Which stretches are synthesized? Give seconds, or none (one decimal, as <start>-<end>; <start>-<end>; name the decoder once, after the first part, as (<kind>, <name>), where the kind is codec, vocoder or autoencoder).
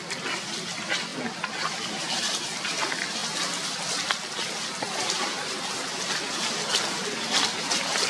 0.0-1.1 (vocoder, BigVGAN v2); 1.6-3.2